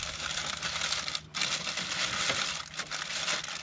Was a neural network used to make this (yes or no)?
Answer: no